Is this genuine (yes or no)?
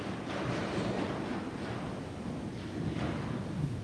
yes